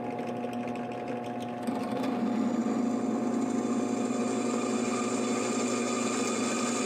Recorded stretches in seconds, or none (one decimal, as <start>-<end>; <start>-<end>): 0.0-6.9